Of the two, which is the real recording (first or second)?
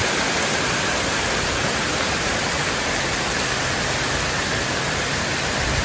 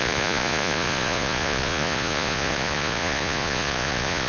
first